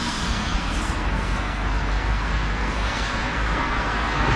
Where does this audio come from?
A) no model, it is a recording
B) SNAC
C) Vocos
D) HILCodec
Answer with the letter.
B